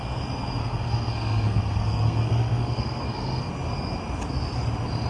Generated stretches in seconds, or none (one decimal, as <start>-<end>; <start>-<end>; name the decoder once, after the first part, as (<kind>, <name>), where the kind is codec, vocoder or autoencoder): 0.6-3.5 (codec, SNAC)